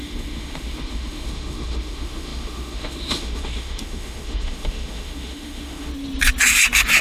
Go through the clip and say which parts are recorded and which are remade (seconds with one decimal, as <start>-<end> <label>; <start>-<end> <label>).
0.0-5.9 remade; 5.9-7.0 recorded